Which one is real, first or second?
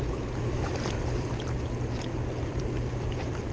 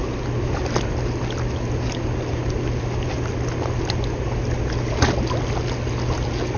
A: second